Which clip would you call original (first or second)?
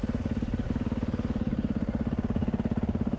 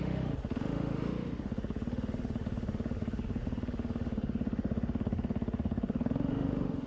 first